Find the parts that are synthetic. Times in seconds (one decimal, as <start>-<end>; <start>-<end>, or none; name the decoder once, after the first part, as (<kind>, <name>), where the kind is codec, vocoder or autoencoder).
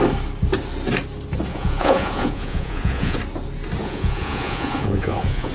1.5-3.2 (vocoder, Vocos); 3.8-5.5